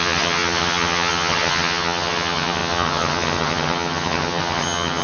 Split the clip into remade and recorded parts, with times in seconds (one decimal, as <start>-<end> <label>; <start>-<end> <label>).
0.0-5.0 remade